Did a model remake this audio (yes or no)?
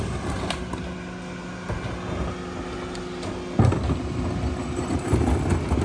no